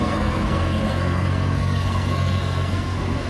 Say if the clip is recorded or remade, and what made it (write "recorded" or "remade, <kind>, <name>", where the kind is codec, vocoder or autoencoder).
remade, codec, SNAC